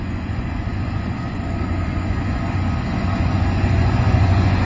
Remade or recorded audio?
remade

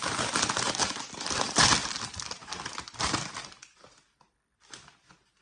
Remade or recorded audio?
recorded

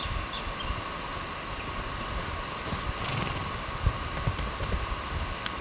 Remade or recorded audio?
recorded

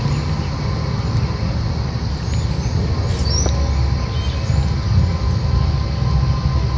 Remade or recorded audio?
recorded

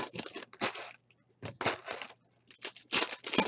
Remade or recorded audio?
recorded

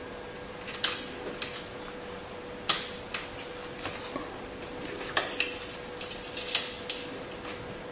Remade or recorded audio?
recorded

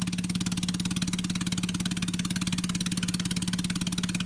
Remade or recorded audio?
recorded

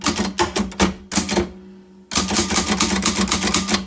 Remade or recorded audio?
recorded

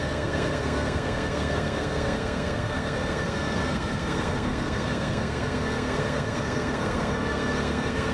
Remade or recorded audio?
remade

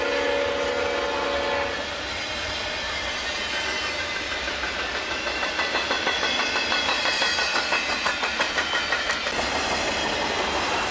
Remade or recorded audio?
recorded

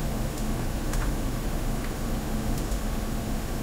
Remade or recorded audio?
remade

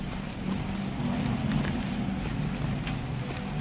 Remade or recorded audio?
recorded